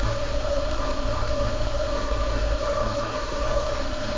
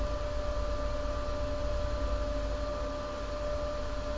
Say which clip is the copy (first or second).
first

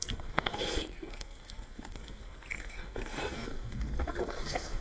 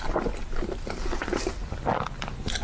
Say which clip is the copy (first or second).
first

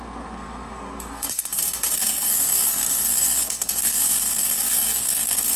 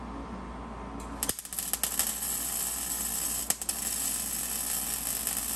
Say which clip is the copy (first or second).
first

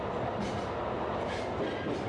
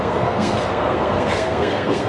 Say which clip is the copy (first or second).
second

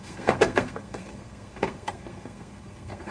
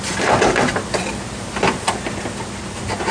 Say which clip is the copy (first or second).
first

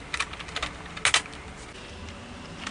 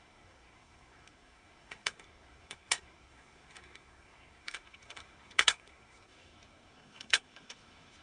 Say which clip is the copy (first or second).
second